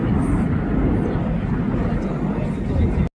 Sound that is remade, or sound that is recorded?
recorded